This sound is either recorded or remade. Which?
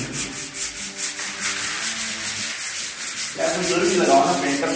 recorded